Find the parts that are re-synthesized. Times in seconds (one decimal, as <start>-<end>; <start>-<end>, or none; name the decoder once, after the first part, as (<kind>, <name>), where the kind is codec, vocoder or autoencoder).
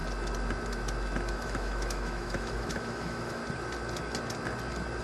1.3-3.4 (autoencoder, DAC-VAE)